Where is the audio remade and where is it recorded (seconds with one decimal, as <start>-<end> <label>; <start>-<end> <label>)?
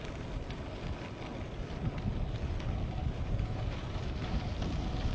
0.0-3.0 recorded; 3.0-4.6 remade; 4.6-5.1 recorded